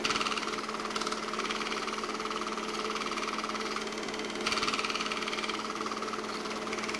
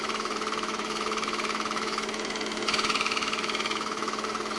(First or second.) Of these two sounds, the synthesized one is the second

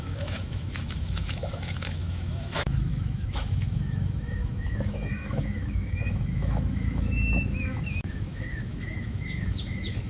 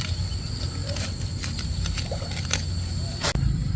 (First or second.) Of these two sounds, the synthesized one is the first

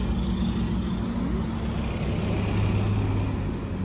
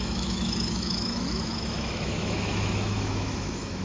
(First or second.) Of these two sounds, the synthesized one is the second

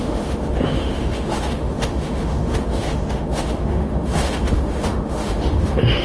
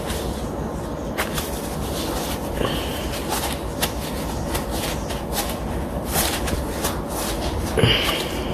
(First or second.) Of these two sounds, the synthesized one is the first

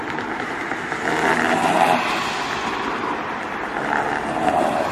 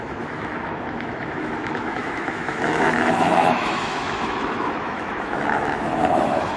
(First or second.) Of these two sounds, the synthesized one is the second